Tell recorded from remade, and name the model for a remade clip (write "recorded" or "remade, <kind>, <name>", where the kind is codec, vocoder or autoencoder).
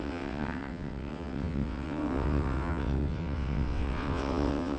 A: remade, vocoder, WaveNeXt